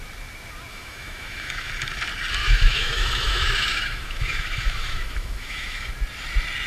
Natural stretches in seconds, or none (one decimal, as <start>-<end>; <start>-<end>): 0.0-0.7; 1.7-2.4; 5.9-6.7